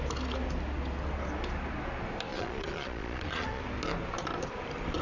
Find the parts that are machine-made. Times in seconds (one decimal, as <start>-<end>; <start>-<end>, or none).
2.3-3.6